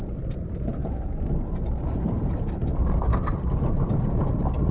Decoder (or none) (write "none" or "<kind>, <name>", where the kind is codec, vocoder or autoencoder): none